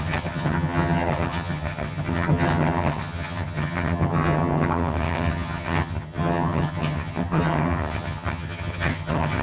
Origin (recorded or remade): remade